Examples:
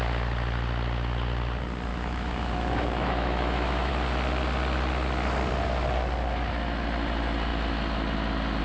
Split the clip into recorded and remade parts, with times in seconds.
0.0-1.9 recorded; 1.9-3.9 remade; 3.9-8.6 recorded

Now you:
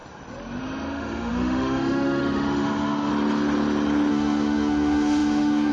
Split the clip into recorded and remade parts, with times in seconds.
0.0-0.6 recorded; 0.6-3.1 remade; 3.1-4.1 recorded; 4.1-5.7 remade